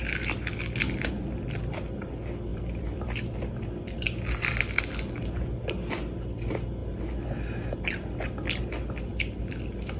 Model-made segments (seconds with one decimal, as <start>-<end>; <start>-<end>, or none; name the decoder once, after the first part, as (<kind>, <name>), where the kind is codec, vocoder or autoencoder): 2.5-3.9 (vocoder, BigVGAN v2); 9.1-10.0